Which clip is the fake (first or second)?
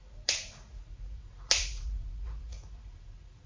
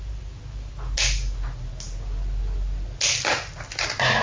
first